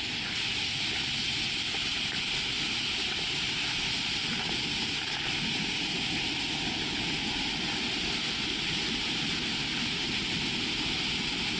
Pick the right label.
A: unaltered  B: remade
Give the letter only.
A